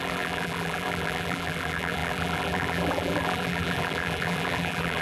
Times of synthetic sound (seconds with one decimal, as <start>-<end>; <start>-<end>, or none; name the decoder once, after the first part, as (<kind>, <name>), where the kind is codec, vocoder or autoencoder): 0.0-5.0 (vocoder, BigVGAN v2)